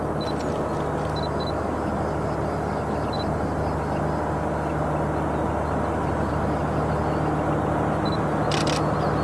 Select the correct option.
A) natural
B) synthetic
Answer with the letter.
A